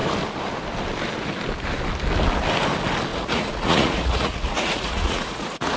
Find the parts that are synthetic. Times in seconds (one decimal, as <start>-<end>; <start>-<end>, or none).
3.1-5.8